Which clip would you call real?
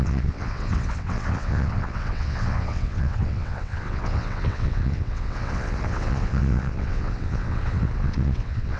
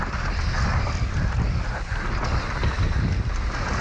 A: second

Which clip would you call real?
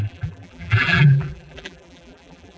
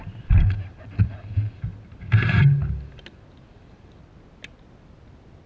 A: second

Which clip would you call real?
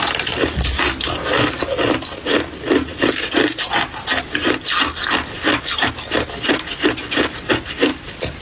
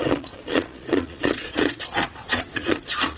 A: first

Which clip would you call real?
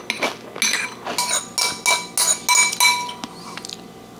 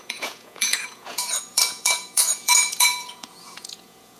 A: first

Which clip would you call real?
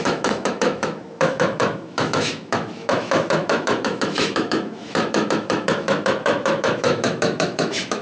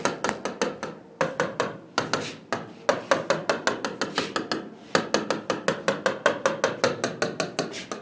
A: second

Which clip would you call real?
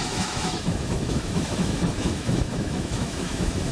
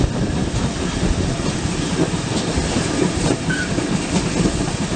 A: second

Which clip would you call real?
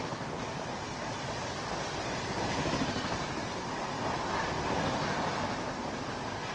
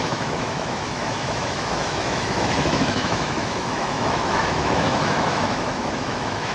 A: first